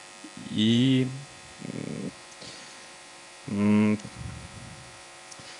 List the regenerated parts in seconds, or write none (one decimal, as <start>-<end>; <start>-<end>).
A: 0.4-1.6; 2.0-5.6